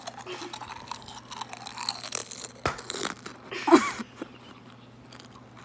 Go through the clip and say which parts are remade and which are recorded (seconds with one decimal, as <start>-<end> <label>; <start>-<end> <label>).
0.0-5.6 recorded